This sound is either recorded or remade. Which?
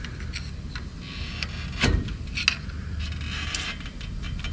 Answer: recorded